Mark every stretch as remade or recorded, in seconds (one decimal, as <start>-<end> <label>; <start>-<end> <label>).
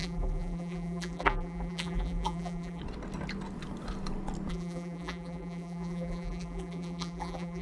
0.0-2.8 remade; 2.8-4.5 recorded; 4.5-7.6 remade